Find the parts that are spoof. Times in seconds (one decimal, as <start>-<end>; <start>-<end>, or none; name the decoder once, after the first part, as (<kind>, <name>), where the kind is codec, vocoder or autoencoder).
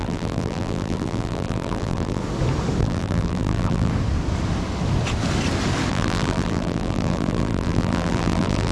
0.0-2.2 (vocoder, BigVGAN v2); 2.8-3.9; 5.9-8.7